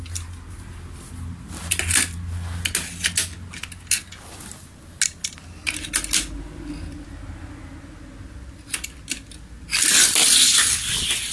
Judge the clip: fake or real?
real